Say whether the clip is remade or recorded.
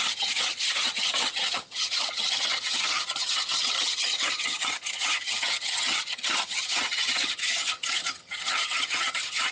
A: remade